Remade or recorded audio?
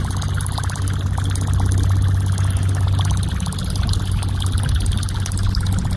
recorded